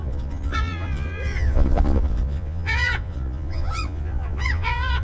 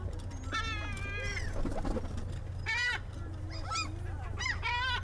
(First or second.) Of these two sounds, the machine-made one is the first